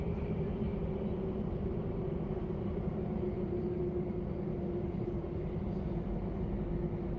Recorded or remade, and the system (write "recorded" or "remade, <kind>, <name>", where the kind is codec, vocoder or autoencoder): recorded